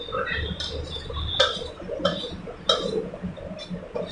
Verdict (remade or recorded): recorded